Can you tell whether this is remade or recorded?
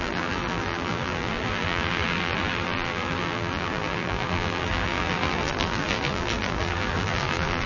remade